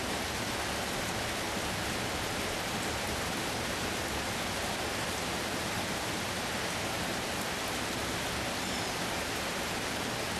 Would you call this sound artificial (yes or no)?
no